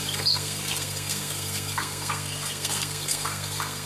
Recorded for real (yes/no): no